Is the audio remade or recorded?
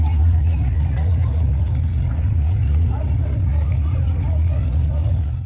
remade